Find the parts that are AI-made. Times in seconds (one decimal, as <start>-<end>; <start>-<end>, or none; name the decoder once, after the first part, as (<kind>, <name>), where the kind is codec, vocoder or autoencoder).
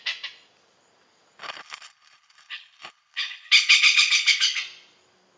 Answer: 1.4-4.6 (codec, HILCodec)